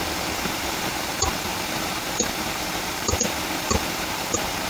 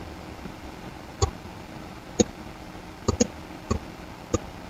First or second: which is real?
second